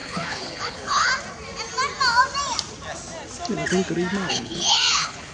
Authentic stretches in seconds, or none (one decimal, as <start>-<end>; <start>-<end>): 1.1-4.3